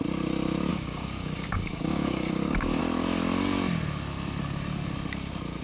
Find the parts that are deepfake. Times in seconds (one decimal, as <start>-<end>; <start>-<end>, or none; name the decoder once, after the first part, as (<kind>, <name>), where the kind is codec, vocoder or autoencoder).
0.7-2.8 (codec, DAC)